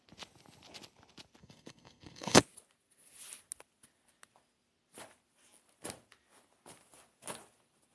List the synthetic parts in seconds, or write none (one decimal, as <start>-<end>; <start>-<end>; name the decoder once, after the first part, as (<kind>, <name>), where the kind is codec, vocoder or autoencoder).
1.4-2.4 (codec, SNAC)